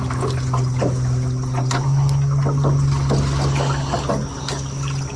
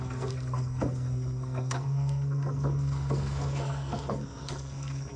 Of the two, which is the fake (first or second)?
second